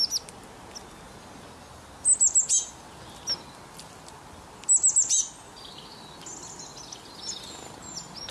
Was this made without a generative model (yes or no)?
yes